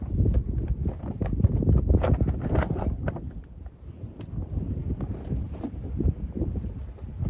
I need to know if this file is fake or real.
real